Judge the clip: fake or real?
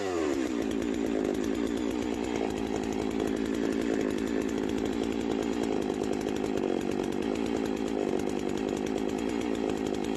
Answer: real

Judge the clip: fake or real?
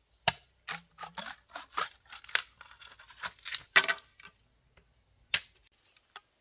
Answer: real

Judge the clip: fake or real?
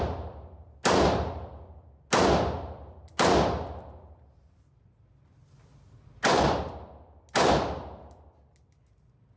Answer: real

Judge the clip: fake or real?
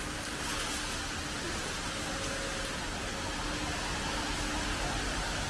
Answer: real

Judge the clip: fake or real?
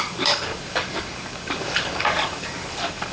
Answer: fake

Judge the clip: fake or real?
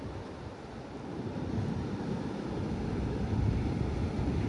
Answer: real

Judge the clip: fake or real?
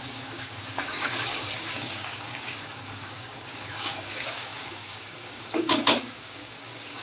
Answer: fake